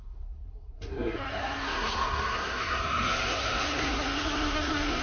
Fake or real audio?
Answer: fake